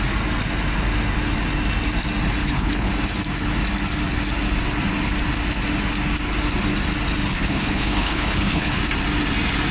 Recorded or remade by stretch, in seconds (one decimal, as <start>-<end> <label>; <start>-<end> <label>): 0.0-2.4 recorded; 2.4-2.9 remade; 2.9-7.3 recorded; 7.3-8.8 remade; 8.8-9.7 recorded

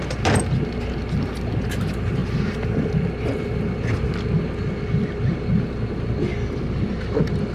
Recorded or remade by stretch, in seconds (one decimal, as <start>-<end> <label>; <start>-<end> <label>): 0.0-7.5 recorded

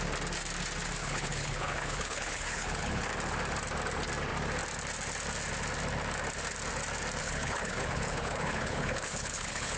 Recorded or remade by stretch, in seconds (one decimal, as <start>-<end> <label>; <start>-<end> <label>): 0.0-1.0 recorded; 1.0-3.0 remade; 3.0-7.2 recorded; 7.2-9.8 remade

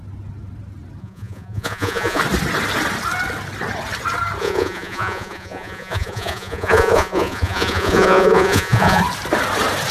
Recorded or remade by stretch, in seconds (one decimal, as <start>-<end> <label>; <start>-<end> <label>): 0.0-1.0 recorded; 1.0-2.2 remade; 2.2-4.4 recorded; 4.4-9.0 remade; 9.0-9.9 recorded

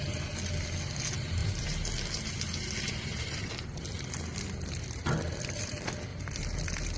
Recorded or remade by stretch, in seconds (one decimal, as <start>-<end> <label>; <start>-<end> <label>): 0.0-6.1 recorded; 6.1-7.0 remade

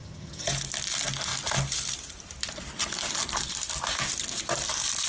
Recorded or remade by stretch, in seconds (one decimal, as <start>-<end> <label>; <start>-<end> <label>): 0.0-0.5 remade; 0.5-5.1 recorded

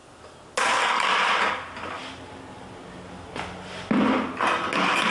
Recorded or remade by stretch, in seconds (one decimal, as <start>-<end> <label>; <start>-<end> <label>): 0.0-5.1 recorded

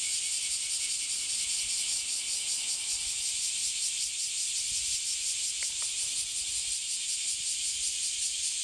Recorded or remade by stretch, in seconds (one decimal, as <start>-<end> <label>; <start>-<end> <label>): 0.0-8.6 recorded